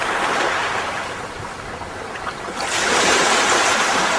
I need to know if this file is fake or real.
fake